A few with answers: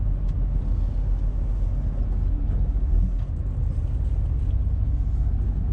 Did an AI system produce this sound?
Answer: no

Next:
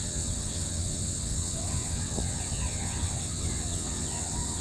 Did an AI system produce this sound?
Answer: yes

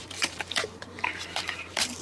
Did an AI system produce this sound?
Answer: yes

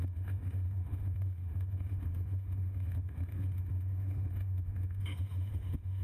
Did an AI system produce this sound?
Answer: yes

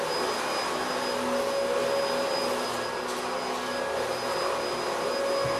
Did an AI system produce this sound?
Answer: no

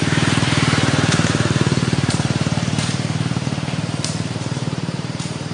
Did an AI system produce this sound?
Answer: yes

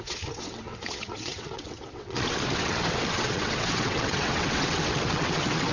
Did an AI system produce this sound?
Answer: yes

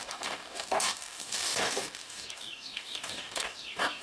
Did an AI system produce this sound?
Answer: yes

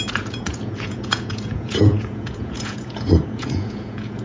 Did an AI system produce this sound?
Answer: yes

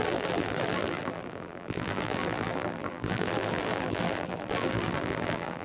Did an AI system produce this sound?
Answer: yes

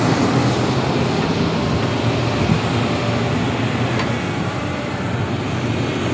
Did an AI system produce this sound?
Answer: no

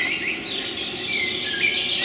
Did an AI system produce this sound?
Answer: no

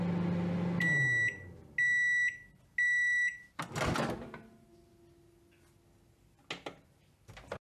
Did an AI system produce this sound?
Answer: no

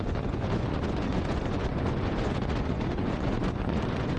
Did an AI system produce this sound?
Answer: yes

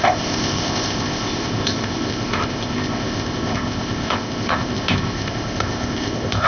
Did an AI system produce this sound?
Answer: yes